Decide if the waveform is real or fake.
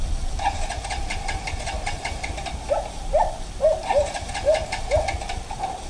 real